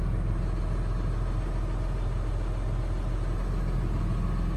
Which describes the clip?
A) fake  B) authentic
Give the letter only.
B